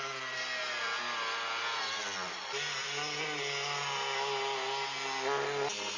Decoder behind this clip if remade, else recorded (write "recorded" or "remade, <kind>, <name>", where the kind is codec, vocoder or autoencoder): recorded